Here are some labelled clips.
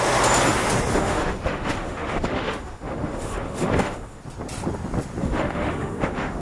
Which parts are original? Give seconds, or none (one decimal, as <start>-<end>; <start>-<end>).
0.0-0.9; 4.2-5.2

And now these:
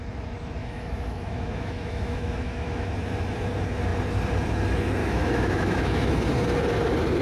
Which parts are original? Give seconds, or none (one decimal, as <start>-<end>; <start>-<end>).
0.0-0.6; 2.9-5.0; 6.1-7.2

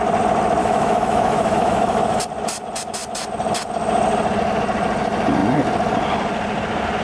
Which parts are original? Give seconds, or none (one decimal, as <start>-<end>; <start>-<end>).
0.0-0.6; 2.2-7.0

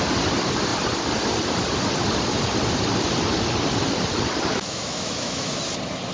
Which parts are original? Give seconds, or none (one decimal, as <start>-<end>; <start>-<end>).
0.0-4.5; 5.5-6.1